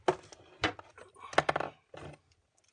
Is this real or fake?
real